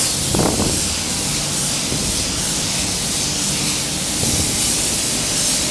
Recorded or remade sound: recorded